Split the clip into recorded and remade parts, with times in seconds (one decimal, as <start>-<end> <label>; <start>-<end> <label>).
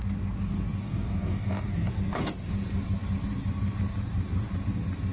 0.0-0.8 recorded; 0.8-1.9 remade; 1.9-5.1 recorded